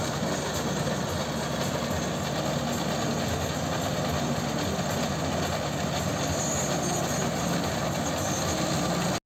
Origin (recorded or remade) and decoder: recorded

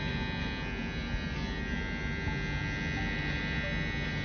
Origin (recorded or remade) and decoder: recorded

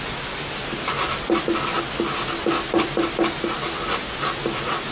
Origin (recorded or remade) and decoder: recorded